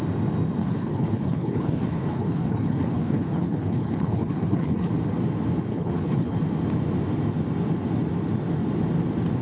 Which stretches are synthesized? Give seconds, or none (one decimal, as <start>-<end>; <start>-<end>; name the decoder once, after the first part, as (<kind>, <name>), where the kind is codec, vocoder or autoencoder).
0.6-4.9 (codec, HILCodec); 5.7-6.4